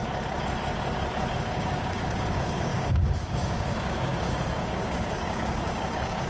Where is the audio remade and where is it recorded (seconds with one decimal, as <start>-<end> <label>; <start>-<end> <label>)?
0.0-1.3 recorded; 1.3-6.3 remade